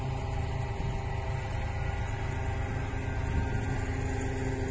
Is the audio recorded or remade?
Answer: recorded